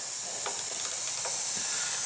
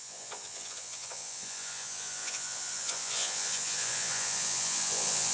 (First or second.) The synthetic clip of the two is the second